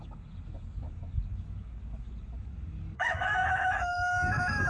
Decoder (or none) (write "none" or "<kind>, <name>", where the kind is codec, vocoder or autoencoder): codec, DAC